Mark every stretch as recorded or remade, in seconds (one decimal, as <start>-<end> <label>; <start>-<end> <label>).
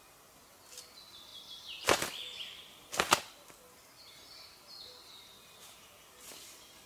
0.0-6.9 recorded